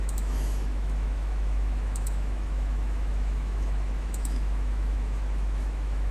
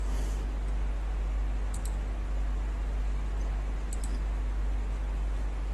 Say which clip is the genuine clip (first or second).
second